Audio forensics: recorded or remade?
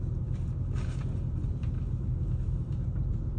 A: remade